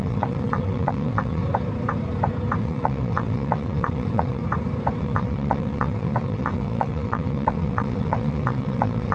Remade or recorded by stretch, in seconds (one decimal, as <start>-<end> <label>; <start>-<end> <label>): 0.0-1.4 remade; 1.4-2.6 recorded; 2.6-4.4 remade; 4.4-5.0 recorded; 5.0-9.1 remade